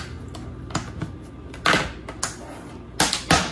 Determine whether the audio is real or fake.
real